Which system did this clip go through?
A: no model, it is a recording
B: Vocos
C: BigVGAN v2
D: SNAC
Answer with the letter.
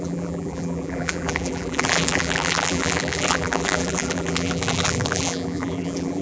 C